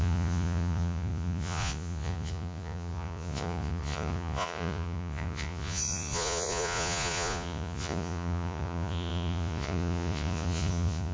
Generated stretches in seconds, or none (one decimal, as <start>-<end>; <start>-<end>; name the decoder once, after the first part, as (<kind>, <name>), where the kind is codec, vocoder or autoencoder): 0.0-11.1 (vocoder, Vocos)